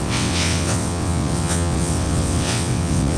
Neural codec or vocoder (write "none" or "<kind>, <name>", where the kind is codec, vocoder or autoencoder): vocoder, WaveNeXt